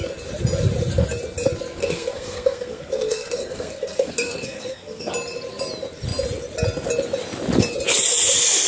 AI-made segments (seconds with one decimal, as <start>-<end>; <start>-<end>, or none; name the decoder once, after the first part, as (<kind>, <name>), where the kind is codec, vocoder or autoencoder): 1.8-5.1 (codec, SNAC)